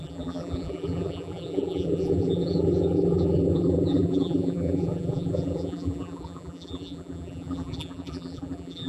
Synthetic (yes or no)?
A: yes